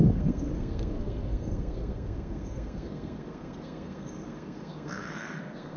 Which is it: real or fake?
fake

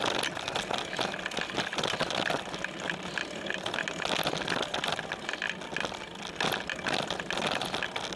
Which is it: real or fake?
real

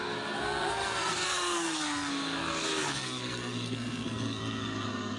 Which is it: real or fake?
fake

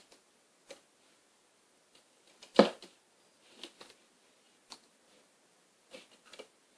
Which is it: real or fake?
real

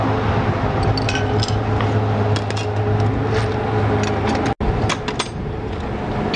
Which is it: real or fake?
real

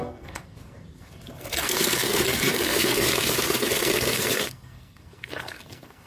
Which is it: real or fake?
fake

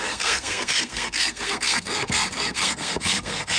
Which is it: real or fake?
fake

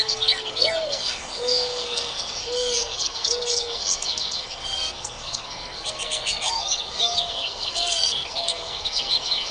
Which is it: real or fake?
fake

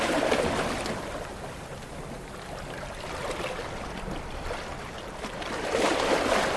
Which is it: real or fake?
real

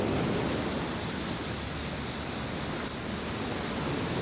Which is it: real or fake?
real